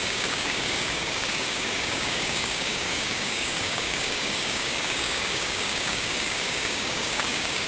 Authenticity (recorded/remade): remade